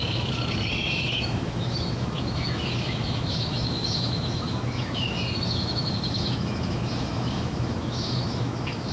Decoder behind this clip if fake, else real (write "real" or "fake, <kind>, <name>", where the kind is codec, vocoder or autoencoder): fake, autoencoder, DAC-VAE